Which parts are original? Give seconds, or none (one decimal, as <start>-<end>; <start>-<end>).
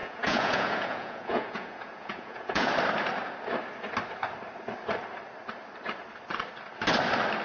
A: 2.7-7.4